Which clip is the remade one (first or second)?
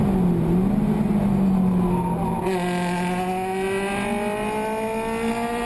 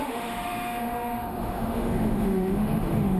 second